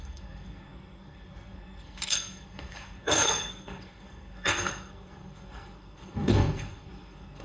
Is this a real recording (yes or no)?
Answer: no